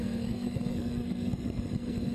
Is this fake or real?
fake